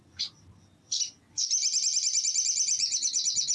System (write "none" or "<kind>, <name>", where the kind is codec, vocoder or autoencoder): none